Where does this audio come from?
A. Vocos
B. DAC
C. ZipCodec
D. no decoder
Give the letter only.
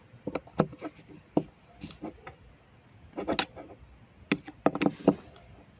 D